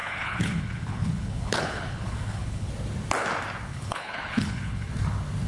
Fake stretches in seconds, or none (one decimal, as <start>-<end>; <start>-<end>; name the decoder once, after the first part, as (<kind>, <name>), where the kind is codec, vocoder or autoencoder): 0.0-2.7 (codec, HILCodec); 3.7-4.9